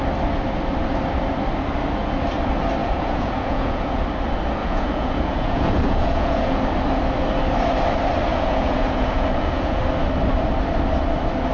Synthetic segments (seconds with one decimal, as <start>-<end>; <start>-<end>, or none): 2.8-4.0; 4.6-6.6; 8.3-9.8